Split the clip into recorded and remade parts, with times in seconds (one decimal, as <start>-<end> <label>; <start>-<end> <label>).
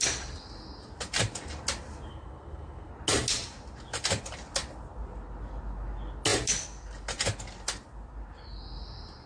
0.0-2.1 recorded; 2.1-2.9 remade; 2.9-9.3 recorded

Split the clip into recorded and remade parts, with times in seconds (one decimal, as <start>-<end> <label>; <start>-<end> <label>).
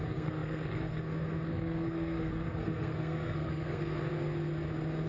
0.0-4.1 remade; 4.1-5.1 recorded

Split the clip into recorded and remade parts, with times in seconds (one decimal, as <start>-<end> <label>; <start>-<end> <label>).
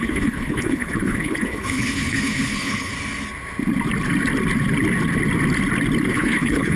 0.0-2.9 remade; 2.9-6.1 recorded; 6.1-6.8 remade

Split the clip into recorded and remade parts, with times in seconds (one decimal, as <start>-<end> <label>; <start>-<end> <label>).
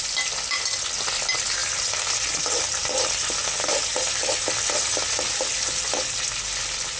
0.0-7.0 recorded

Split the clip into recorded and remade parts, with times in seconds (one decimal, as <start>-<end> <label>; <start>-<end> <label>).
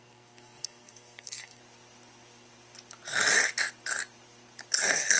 0.0-1.6 remade; 1.6-4.7 recorded; 4.7-5.2 remade